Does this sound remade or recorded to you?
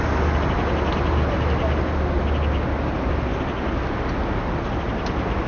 recorded